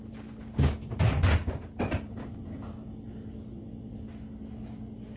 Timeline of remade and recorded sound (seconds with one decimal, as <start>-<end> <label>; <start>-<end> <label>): 0.0-1.4 recorded; 1.4-3.9 remade; 3.9-5.2 recorded